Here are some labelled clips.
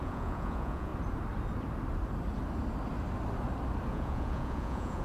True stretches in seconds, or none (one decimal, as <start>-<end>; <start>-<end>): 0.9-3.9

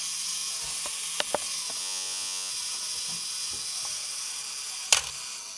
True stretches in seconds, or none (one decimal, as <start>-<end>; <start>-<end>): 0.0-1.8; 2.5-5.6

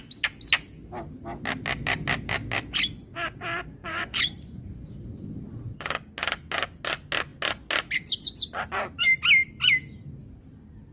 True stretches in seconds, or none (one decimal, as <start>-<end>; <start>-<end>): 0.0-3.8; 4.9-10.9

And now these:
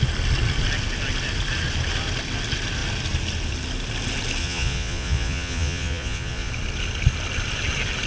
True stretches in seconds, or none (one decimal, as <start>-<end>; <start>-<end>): 0.0-4.4; 6.5-8.1

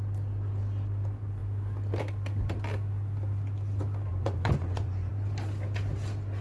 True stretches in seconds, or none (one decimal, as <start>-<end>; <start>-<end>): 0.0-4.1; 5.1-6.4

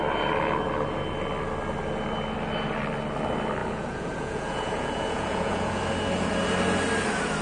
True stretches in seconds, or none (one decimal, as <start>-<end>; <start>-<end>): 0.0-3.6; 5.8-7.4

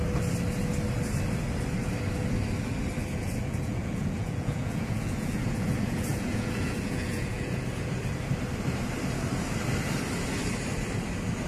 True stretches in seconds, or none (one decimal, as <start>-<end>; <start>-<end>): 0.0-3.0; 7.9-11.5